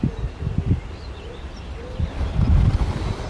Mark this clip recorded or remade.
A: recorded